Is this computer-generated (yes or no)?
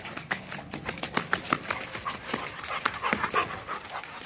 no